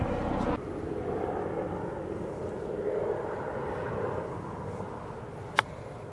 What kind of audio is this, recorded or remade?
recorded